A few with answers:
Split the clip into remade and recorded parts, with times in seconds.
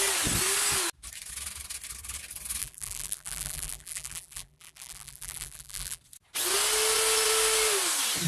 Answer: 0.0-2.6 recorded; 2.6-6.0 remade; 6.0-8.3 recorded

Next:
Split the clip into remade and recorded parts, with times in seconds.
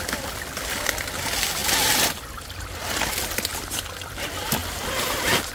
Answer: 0.0-5.5 recorded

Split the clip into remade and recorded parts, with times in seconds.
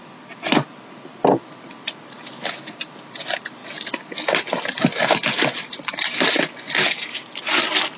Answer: 0.0-3.6 remade; 3.6-4.5 recorded; 4.5-8.0 remade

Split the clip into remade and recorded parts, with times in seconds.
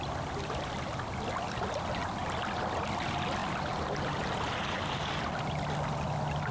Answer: 0.0-6.5 recorded